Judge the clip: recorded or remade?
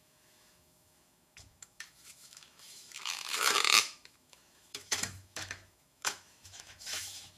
remade